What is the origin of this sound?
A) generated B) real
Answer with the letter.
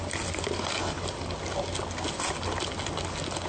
B